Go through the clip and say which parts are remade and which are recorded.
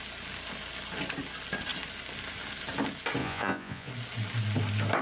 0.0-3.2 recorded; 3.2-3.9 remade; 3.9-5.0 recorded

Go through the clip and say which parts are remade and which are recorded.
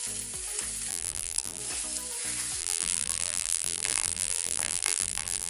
0.0-0.9 recorded; 0.9-1.6 remade; 1.6-2.6 recorded; 2.6-5.5 remade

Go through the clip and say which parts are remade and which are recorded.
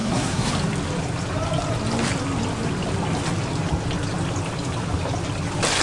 0.0-0.5 remade; 0.5-5.8 recorded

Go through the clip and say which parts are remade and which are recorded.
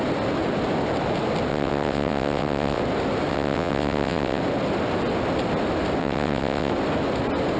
0.0-1.5 recorded; 1.5-2.8 remade; 2.8-3.3 recorded; 3.3-4.4 remade; 4.4-6.0 recorded; 6.0-6.7 remade; 6.7-7.6 recorded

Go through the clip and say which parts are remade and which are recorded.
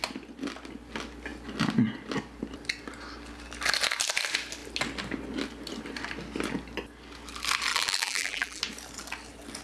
0.0-7.7 recorded; 7.7-8.6 remade; 8.6-9.6 recorded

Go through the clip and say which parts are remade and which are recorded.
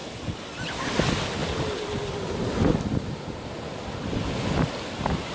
0.0-5.3 recorded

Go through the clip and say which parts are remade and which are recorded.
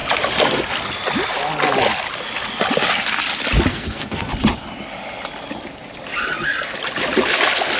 0.0-3.7 recorded; 3.7-4.3 remade; 4.3-7.8 recorded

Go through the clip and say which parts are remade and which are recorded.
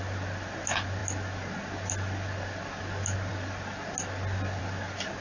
0.0-5.2 recorded